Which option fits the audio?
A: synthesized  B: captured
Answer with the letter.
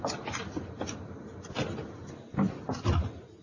B